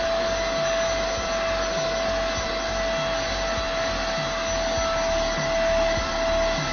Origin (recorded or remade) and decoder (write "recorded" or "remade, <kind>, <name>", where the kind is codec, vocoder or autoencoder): recorded